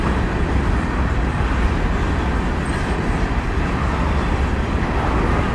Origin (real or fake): real